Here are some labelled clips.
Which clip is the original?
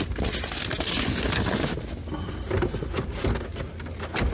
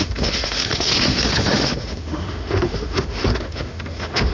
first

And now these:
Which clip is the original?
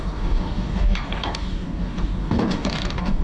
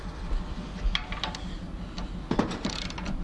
second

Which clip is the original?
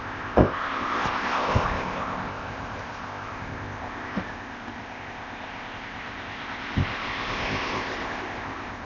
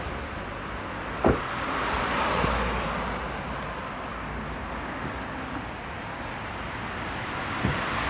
second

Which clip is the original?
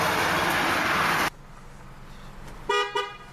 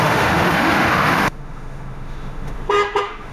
first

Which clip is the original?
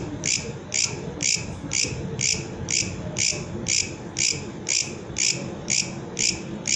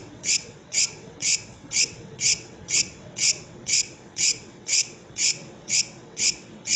first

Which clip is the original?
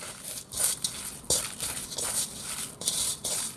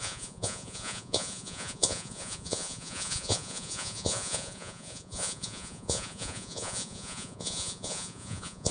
first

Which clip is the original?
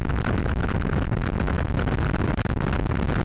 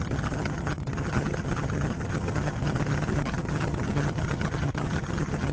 first